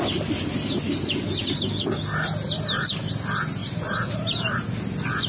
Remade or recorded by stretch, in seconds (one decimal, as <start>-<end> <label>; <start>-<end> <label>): 0.0-3.6 recorded; 3.6-4.2 remade; 4.2-5.3 recorded